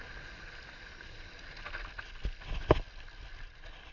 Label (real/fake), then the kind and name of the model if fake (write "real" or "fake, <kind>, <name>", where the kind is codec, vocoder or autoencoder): real